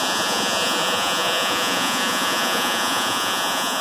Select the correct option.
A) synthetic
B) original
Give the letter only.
A